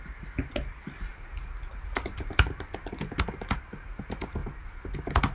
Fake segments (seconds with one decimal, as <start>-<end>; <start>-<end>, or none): none